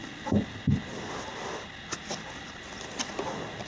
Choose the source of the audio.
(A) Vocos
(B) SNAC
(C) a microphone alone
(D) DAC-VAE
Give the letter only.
C